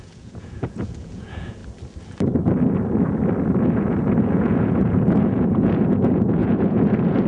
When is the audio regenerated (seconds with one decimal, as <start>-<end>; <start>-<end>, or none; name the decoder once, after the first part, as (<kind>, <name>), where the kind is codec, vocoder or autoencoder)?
0.0-1.6 (vocoder, Vocos); 3.6-7.3